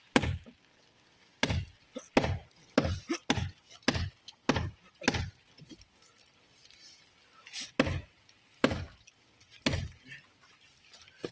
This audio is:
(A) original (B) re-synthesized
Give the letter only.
A